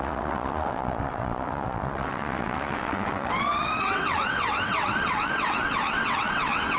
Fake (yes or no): yes